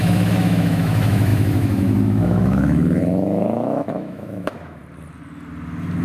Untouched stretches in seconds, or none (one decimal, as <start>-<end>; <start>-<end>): 4.8-6.0